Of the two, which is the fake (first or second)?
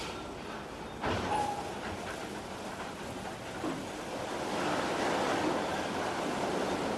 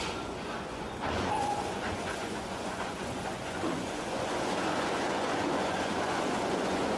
second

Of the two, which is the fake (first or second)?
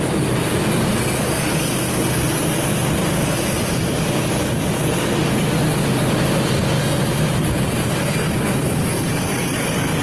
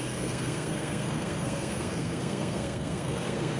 second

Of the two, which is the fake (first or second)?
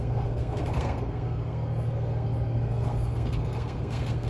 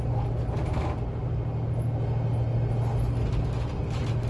first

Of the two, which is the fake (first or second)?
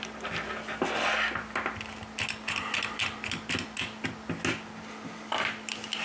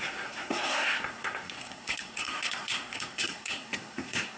second